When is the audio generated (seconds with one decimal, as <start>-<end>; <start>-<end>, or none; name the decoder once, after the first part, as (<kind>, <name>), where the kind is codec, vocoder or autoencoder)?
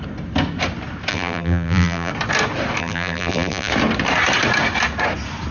1.1-2.1 (vocoder, BigVGAN v2); 2.8-3.7